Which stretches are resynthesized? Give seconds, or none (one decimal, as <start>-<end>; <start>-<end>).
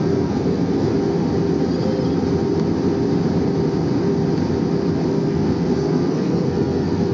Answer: 0.0-0.9; 5.1-7.1